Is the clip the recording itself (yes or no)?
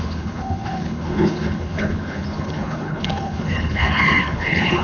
no